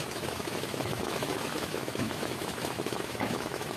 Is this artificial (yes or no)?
yes